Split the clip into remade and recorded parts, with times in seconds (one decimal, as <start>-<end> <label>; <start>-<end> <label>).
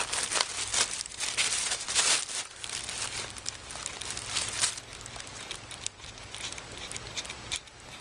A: 0.0-0.7 recorded; 0.7-4.4 remade; 4.4-8.0 recorded